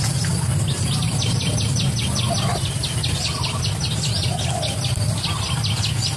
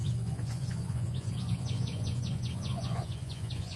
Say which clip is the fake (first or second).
second